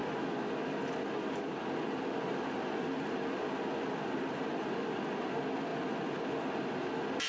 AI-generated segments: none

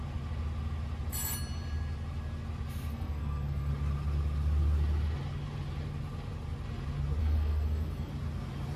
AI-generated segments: 2.9-3.7 (codec, SNAC); 7.2-8.1

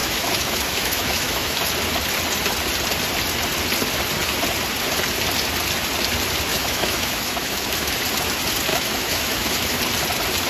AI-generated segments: 0.0-1.6 (autoencoder, DAC-VAE); 6.5-7.9; 8.7-9.8

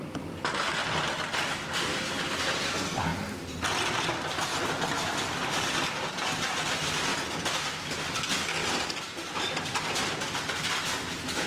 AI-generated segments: 0.8-2.0 (vocoder, BigVGAN v2); 7.1-8.0; 8.6-10.8

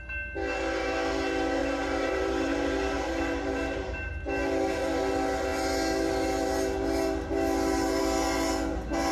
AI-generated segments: 1.6-4.1 (vocoder, BigVGAN v2)

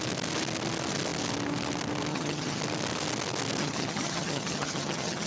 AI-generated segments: 2.1-2.6 (vocoder, HiFi-GAN); 3.6-5.3